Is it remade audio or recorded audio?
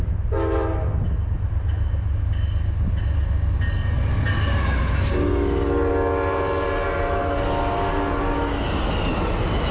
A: recorded